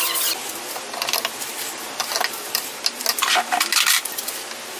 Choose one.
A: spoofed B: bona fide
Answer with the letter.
B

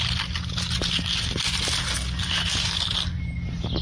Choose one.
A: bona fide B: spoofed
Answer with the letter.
A